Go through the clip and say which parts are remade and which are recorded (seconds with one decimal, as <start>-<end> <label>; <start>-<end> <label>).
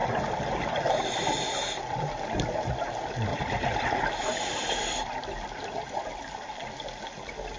0.0-3.3 recorded; 3.3-4.2 remade; 4.2-7.6 recorded